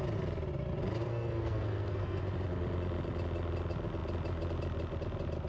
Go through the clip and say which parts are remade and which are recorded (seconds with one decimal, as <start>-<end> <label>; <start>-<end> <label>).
0.0-1.1 recorded; 1.1-2.2 remade; 2.2-5.5 recorded

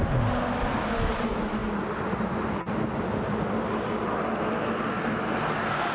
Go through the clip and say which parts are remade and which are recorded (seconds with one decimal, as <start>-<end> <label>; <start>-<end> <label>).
0.0-5.9 recorded

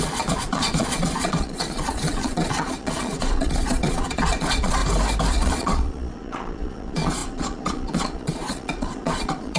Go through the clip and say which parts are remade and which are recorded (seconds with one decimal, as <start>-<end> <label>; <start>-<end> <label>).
0.0-4.8 remade; 4.8-5.3 recorded; 5.3-9.6 remade

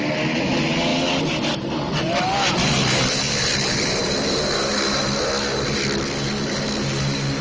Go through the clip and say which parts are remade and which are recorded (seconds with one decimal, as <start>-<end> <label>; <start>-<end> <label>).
0.0-7.4 recorded

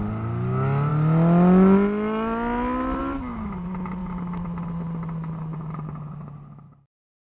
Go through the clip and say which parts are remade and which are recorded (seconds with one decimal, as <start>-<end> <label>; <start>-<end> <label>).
0.0-7.2 recorded

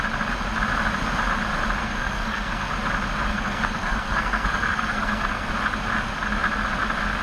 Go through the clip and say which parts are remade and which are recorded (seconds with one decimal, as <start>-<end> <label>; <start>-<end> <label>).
0.0-1.8 recorded; 1.8-2.7 remade; 2.7-3.3 recorded; 3.3-5.5 remade; 5.5-7.2 recorded

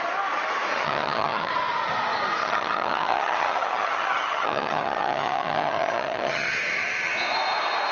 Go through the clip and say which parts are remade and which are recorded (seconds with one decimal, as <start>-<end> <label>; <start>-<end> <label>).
0.0-0.7 recorded; 0.7-1.5 remade; 1.5-2.4 recorded; 2.4-7.1 remade; 7.1-7.9 recorded